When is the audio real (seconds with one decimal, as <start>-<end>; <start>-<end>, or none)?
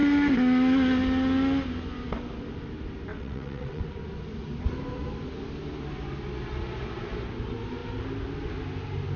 0.0-3.1; 3.8-9.2